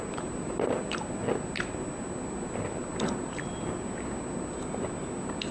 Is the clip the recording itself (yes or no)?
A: yes